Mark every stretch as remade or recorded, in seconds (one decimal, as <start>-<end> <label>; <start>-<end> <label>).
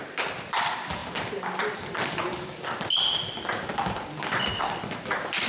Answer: 0.0-5.5 recorded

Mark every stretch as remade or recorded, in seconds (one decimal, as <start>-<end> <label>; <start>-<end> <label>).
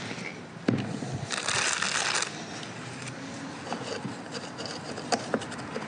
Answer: 0.0-5.9 recorded